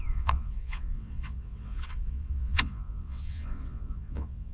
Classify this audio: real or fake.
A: fake